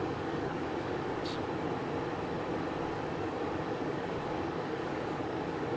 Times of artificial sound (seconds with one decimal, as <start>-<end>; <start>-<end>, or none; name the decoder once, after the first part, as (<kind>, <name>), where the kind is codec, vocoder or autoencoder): 0.0-1.2 (codec, DAC); 3.2-5.8